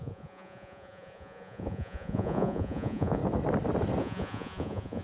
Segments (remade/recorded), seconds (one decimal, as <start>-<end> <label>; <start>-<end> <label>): 0.0-3.2 remade; 3.2-4.0 recorded; 4.0-5.0 remade